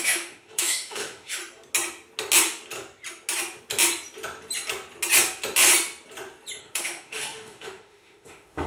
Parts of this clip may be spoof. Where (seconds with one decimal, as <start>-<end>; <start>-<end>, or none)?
0.0-1.4; 6.6-8.7